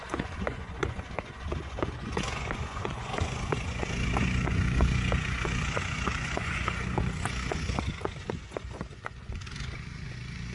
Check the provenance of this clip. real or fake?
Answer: fake